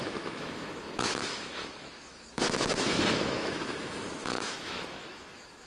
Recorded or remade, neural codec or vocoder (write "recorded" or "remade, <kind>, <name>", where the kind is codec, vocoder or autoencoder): remade, autoencoder, DAC-VAE